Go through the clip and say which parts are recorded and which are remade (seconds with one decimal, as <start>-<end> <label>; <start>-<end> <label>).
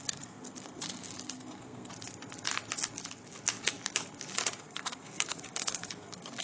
0.0-1.9 remade; 1.9-4.6 recorded; 4.6-6.4 remade